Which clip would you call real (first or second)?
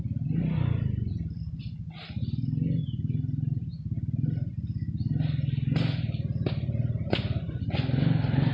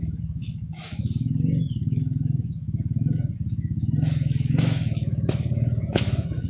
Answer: first